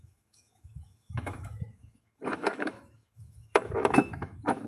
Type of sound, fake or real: fake